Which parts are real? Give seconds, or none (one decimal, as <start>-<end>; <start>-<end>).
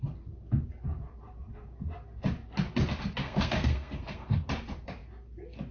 0.0-3.2; 4.4-5.7